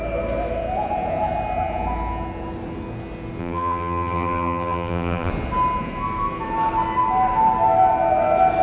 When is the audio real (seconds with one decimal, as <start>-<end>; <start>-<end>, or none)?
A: 0.0-3.4; 5.3-8.6